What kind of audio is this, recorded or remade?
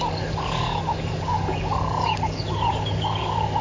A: remade